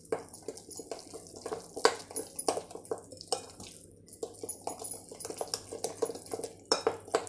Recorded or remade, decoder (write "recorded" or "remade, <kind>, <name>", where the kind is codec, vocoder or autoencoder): recorded